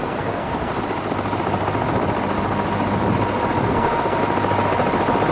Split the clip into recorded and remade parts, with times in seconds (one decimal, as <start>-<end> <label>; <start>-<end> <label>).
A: 0.0-0.7 remade; 0.7-3.6 recorded; 3.6-4.2 remade; 4.2-5.3 recorded